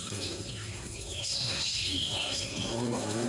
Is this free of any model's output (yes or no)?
no